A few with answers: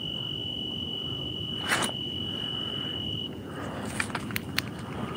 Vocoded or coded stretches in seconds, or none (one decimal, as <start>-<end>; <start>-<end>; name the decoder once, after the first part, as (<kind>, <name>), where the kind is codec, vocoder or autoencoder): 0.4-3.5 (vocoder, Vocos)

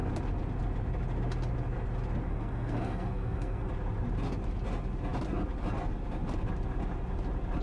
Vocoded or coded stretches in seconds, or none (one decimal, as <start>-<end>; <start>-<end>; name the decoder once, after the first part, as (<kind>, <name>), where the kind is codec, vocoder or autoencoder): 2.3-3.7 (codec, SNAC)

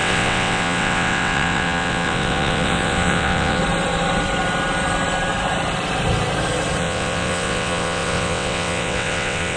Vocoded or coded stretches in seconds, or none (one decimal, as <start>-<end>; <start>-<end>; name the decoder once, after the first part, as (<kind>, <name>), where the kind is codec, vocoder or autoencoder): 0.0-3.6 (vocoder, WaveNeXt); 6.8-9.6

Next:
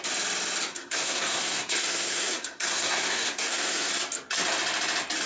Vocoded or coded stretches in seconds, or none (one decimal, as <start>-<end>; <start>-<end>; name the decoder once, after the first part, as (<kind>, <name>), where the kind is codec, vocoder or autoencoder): 0.7-3.9 (codec, SNAC)